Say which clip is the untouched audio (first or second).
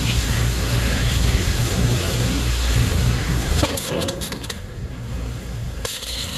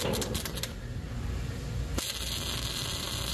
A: second